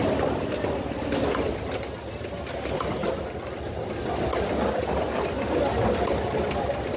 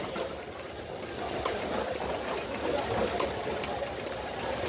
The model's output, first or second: second